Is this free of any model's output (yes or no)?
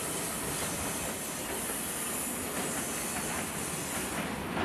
yes